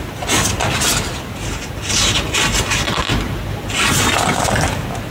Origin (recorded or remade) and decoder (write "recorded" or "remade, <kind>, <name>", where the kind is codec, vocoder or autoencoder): recorded